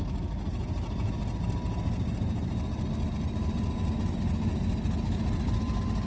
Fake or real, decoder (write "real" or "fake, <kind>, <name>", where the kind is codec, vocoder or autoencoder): real